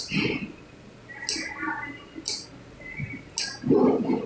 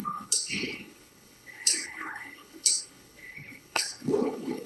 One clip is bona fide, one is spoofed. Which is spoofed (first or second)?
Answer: second